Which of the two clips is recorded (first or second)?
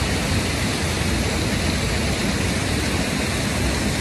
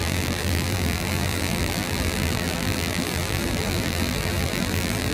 first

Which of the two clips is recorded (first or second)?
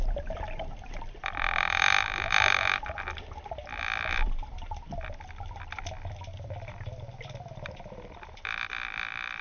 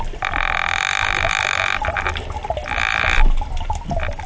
second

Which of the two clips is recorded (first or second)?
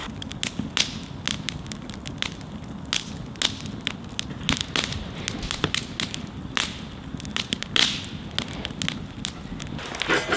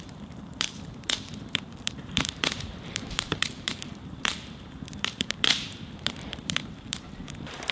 first